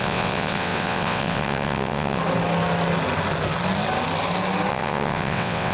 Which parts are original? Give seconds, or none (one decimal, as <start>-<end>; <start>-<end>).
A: 2.2-4.7